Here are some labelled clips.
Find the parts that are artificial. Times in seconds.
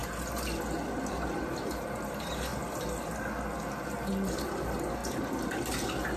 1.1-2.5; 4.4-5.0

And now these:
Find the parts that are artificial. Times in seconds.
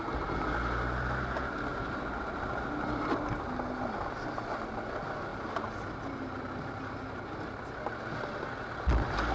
none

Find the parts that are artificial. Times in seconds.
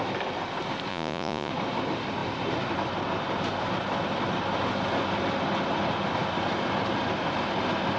0.9-1.5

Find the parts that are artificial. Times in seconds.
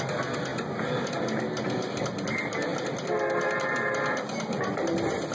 none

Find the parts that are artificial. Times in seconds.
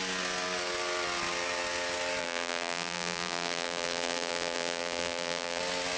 2.2-5.6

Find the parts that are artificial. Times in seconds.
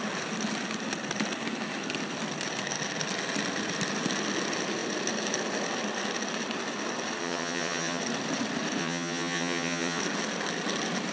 7.2-8.0; 8.8-10.0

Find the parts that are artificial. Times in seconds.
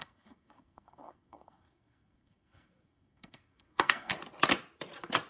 0.0-4.1